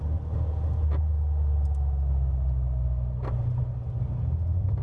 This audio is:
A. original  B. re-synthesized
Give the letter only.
A